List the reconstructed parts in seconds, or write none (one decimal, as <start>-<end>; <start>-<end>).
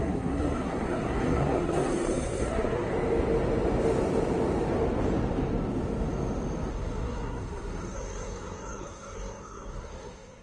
0.0-2.9; 6.7-10.4